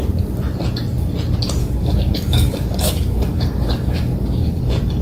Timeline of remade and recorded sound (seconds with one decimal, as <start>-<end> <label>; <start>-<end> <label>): 0.0-1.6 recorded; 1.6-4.6 remade; 4.6-5.0 recorded